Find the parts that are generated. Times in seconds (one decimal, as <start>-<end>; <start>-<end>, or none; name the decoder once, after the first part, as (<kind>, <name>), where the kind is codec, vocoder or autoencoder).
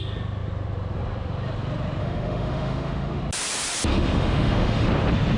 2.0-3.2 (autoencoder, DAC-VAE); 3.9-4.9